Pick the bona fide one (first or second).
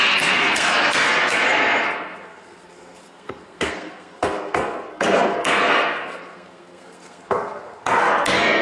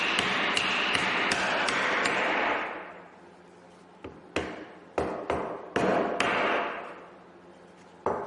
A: second